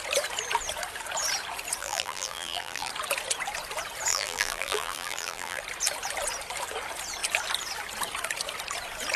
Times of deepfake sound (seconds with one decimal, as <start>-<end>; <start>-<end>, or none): 1.8-2.9; 4.1-5.6